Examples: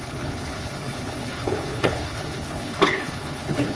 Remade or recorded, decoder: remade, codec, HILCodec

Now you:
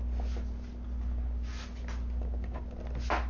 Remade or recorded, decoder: recorded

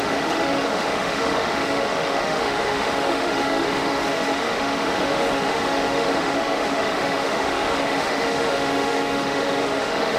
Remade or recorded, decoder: remade, autoencoder, DAC-VAE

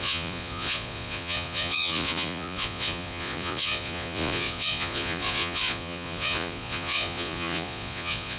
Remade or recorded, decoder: remade, vocoder, Vocos